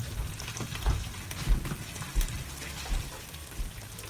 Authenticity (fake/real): real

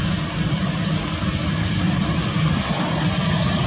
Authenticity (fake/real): real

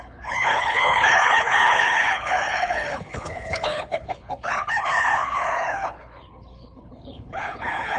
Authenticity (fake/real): fake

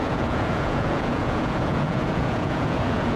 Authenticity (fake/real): fake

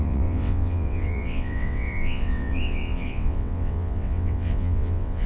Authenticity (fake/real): fake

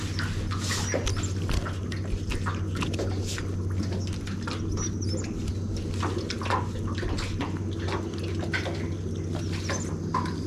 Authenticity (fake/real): real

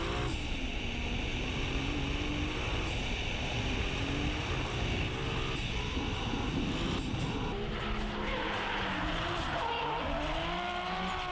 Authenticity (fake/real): real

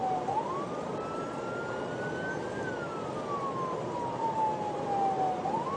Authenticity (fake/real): real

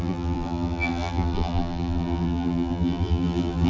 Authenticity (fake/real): fake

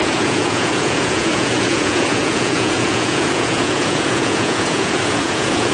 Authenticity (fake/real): fake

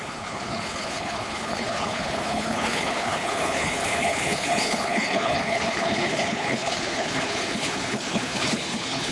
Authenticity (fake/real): fake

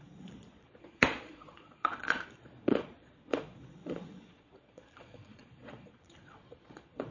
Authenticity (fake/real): fake